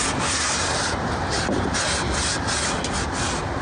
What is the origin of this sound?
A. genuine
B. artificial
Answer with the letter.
A